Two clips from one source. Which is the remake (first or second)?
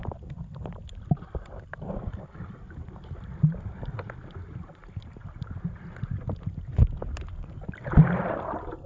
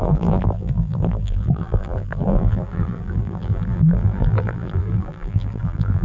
second